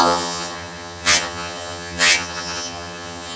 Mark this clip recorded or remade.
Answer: remade